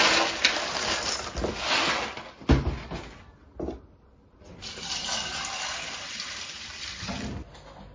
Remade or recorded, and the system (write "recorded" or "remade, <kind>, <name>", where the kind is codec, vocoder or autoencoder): recorded